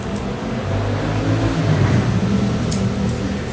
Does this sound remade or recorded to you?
recorded